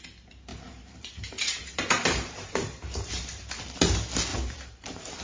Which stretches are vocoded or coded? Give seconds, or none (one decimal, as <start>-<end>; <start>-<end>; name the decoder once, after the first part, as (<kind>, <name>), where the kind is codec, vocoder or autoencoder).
0.5-3.6 (vocoder, BigVGAN v2); 4.3-5.2

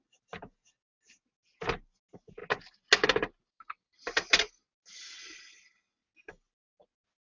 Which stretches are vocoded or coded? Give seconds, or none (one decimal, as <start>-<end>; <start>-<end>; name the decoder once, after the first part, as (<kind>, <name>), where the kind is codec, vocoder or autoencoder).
none

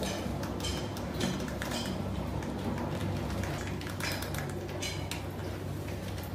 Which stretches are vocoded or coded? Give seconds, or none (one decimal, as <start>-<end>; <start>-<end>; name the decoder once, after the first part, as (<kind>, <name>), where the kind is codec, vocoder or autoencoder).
0.7-2.4 (vocoder, BigVGAN v2); 5.4-6.3

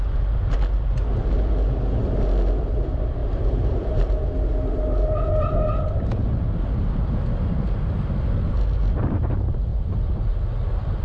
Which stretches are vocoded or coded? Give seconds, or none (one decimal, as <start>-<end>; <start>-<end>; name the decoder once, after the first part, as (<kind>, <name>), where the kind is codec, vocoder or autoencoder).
3.2-4.3 (vocoder, BigVGAN v2); 9.7-10.3

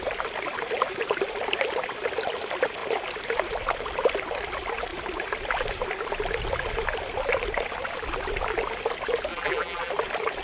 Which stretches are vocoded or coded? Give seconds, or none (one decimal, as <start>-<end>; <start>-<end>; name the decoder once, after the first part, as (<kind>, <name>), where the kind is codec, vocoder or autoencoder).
9.3-9.9 (vocoder, BigVGAN v2)

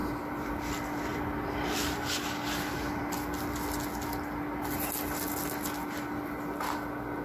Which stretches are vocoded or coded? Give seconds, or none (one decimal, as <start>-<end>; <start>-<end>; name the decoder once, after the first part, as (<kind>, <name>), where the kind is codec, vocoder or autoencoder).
0.0-0.5 (vocoder, BigVGAN v2); 1.1-3.0

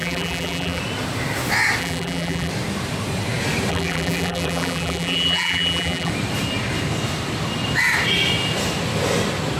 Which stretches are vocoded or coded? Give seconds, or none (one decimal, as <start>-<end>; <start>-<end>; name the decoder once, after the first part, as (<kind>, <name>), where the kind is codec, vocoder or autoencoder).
0.0-0.8 (vocoder, BigVGAN v2); 1.8-2.5; 3.7-6.1